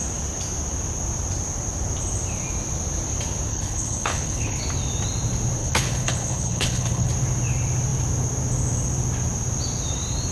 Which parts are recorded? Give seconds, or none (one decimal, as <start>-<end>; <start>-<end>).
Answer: 0.0-3.5; 4.6-5.6; 7.1-10.3